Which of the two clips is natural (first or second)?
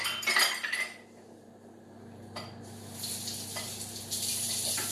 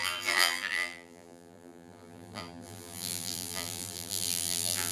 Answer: first